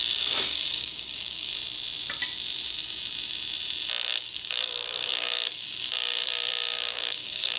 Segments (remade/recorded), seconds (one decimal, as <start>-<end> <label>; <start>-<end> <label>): 0.0-1.5 remade; 1.5-4.1 recorded; 4.1-7.6 remade